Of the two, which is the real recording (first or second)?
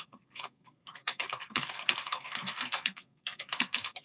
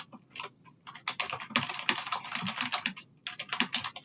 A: second